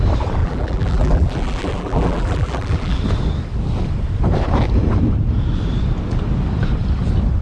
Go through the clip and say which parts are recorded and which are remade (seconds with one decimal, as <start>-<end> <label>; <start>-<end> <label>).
0.0-0.4 recorded; 0.4-3.0 remade; 3.0-7.4 recorded